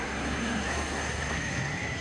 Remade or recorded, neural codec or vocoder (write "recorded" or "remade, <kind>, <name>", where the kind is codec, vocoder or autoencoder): remade, codec, SNAC